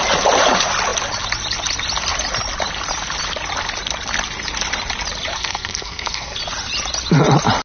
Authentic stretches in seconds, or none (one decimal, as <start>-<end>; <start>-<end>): 0.0-5.3; 6.4-7.6